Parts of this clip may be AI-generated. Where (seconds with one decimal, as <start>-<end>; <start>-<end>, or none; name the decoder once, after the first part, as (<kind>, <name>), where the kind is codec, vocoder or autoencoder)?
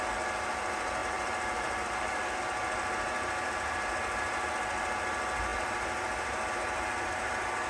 1.0-2.4 (vocoder, BigVGAN v2); 5.5-6.5